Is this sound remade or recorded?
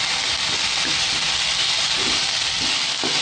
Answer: recorded